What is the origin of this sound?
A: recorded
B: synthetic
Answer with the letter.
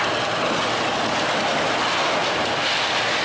A